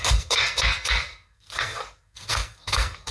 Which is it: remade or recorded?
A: remade